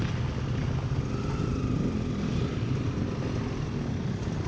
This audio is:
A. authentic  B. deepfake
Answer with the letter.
A